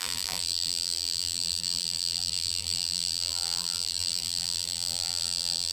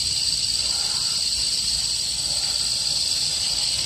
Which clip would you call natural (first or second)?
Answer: second